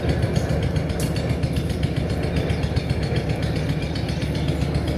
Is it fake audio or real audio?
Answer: real